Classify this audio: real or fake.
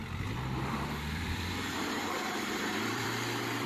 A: fake